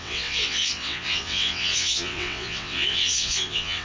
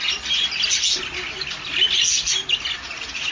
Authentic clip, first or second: second